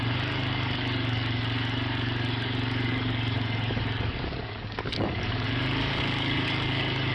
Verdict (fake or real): fake